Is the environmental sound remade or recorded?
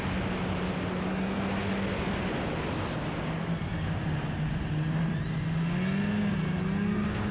recorded